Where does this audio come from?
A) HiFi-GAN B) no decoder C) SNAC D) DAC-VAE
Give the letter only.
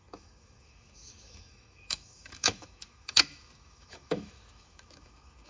D